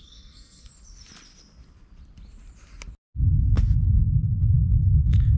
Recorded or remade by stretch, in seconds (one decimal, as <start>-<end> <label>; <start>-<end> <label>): 0.0-0.7 remade; 0.7-3.9 recorded; 3.9-5.4 remade